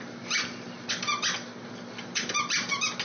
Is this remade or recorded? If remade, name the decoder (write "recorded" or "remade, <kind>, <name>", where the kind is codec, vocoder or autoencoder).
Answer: recorded